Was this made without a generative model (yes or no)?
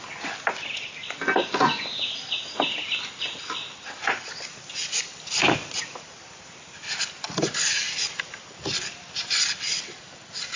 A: yes